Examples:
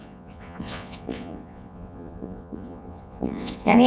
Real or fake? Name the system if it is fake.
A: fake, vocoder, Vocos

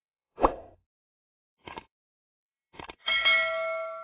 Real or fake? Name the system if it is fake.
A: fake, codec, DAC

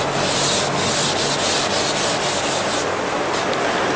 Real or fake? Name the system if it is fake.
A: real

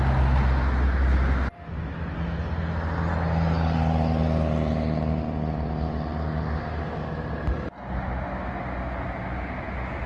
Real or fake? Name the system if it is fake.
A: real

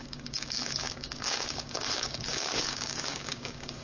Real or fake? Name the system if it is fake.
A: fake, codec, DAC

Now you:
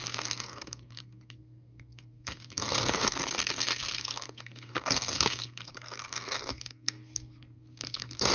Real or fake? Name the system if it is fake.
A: fake, codec, SNAC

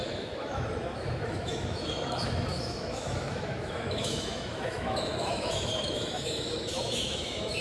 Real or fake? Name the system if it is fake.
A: fake, autoencoder, DAC-VAE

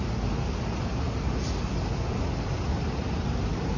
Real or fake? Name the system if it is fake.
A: real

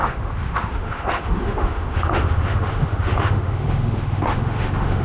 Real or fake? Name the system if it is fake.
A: fake, autoencoder, DAC-VAE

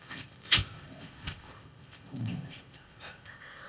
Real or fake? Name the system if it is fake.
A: fake, codec, ZipCodec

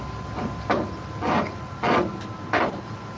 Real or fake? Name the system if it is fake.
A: real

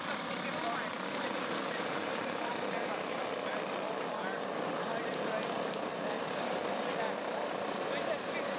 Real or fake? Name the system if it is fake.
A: fake, vocoder, BigVGAN v2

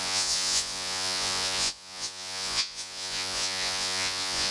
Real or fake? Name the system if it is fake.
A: fake, vocoder, Vocos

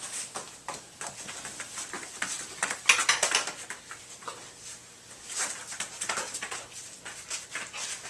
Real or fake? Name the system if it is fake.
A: real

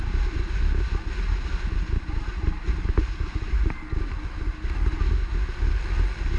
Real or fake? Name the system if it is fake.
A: real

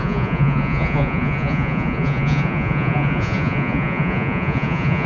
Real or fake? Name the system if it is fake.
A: fake, vocoder, Vocos